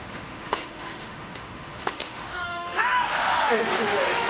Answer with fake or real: fake